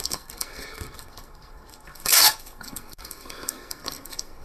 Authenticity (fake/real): fake